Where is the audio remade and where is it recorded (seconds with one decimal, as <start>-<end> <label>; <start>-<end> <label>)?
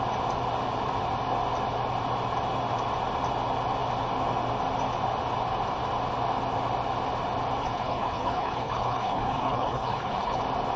0.0-7.6 recorded; 7.6-10.4 remade; 10.4-10.8 recorded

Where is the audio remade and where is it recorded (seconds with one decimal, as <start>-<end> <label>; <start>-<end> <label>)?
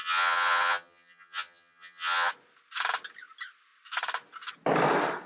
0.0-2.3 remade; 2.3-5.3 recorded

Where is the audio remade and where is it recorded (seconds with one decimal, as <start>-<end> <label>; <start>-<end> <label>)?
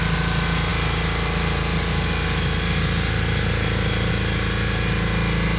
0.0-5.6 recorded